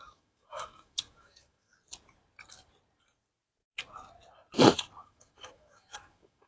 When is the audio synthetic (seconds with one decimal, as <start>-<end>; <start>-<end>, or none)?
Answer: 0.0-1.7; 5.0-6.5